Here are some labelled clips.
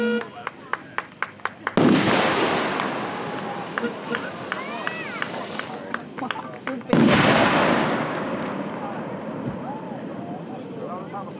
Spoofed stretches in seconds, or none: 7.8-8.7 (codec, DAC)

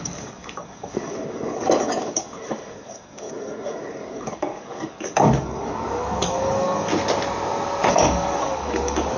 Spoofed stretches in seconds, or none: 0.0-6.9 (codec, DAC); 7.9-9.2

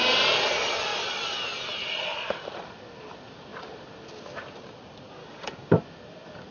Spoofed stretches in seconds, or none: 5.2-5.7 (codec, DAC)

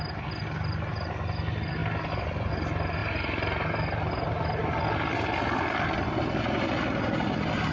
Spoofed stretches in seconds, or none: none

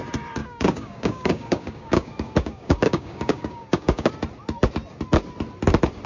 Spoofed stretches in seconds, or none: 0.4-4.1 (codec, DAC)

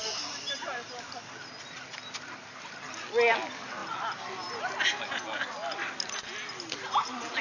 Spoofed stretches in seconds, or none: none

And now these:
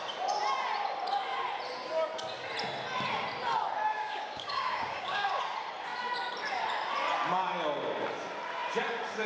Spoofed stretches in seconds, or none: 3.9-5.4 (codec, DAC)